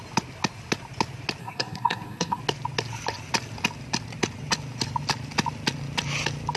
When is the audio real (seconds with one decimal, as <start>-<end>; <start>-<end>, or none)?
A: 0.0-1.4; 2.4-6.6

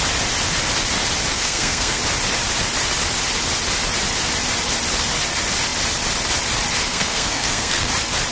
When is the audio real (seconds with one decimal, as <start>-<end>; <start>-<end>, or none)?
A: 0.0-1.3; 2.0-6.9; 7.9-8.3

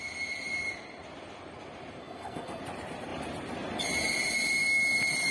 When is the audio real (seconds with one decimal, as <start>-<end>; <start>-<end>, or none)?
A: 0.0-2.0; 2.6-5.3

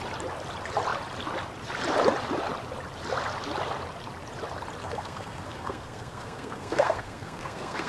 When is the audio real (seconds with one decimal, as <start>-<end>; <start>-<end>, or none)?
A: 0.0-4.8